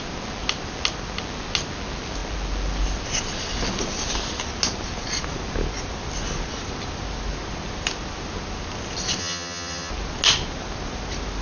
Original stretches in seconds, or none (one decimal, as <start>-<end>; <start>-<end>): 0.0-9.2; 9.9-11.4